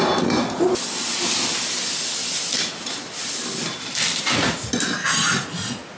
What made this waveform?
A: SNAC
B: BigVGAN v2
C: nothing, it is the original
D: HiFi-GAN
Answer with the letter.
C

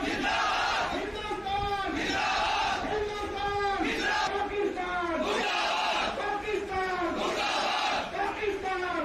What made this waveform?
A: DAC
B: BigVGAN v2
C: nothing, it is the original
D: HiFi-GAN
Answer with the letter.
B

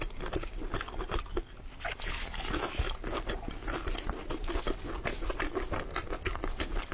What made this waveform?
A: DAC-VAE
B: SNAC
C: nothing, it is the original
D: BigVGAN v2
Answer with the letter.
C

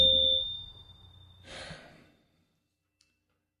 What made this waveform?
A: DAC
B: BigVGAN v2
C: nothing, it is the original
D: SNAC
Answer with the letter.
C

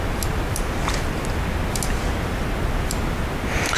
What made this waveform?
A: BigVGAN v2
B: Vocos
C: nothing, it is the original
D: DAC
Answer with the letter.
C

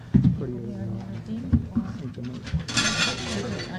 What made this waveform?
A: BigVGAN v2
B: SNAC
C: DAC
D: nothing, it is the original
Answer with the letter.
D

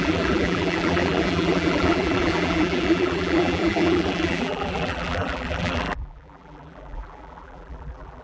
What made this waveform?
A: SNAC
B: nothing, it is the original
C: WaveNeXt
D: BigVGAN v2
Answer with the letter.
D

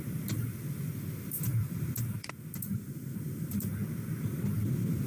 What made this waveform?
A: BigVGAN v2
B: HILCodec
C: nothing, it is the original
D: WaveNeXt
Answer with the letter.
A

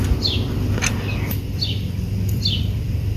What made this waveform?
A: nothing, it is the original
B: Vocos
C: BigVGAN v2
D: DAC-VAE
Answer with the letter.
C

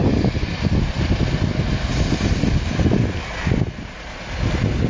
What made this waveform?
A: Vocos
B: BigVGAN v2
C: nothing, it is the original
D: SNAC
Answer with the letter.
C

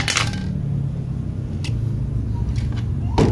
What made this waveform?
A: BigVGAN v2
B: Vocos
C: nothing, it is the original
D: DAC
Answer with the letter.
C